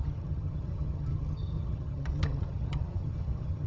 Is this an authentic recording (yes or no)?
no